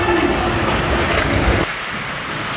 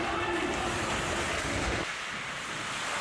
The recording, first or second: first